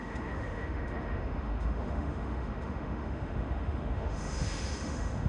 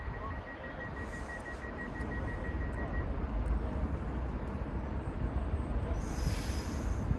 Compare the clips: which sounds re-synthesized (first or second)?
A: first